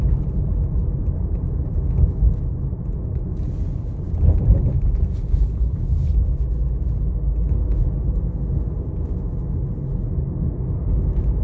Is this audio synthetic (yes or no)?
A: no